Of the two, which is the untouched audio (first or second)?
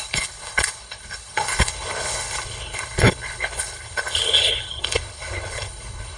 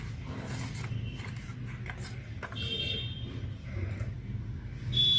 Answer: second